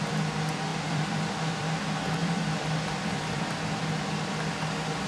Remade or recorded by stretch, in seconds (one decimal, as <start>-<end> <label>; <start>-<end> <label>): 0.0-0.7 recorded; 0.7-1.8 remade; 1.8-2.2 recorded; 2.2-3.5 remade; 3.5-5.1 recorded